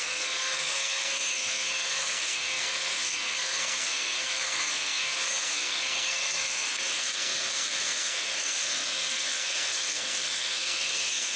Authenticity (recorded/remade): remade